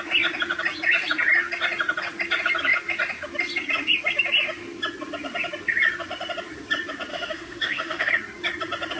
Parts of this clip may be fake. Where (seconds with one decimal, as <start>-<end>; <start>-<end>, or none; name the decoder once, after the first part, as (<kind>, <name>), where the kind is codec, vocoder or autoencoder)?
7.1-8.1 (autoencoder, DAC-VAE)